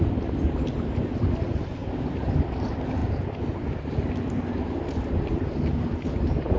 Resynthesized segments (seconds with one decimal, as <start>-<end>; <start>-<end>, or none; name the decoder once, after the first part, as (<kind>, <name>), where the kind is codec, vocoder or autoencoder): none